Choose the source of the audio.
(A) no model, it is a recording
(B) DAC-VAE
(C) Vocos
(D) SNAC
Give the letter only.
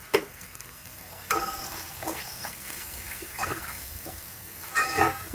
D